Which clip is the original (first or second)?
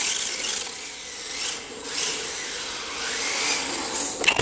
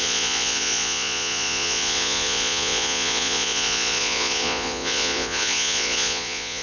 first